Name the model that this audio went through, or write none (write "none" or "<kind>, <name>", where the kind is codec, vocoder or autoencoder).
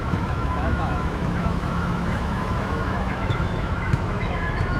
autoencoder, DAC-VAE